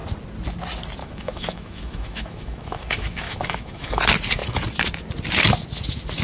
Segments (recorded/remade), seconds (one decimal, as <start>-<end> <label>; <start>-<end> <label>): 0.0-1.0 recorded; 1.0-4.0 remade; 4.0-6.2 recorded